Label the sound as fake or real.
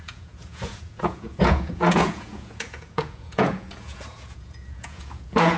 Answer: fake